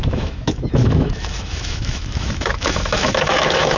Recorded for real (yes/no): no